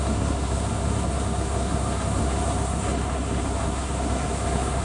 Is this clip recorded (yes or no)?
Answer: no